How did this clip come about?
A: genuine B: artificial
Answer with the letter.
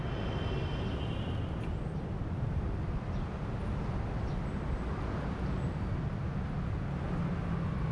A